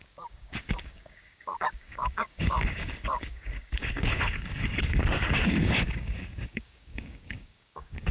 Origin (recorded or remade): remade